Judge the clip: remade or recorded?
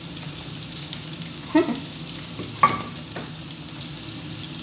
recorded